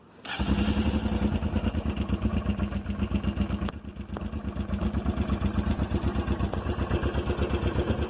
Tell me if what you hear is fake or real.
real